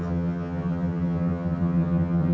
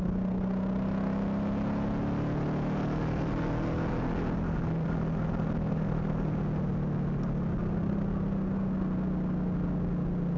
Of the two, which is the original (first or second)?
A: second